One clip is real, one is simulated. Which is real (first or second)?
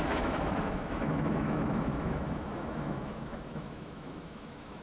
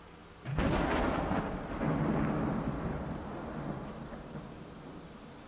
second